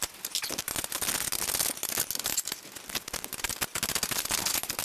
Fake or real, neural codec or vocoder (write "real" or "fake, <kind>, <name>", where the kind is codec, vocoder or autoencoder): real